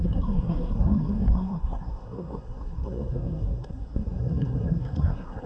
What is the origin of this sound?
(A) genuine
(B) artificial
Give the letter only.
B